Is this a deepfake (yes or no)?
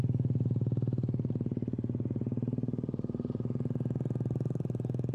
yes